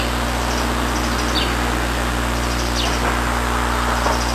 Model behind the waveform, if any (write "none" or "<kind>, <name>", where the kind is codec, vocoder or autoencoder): none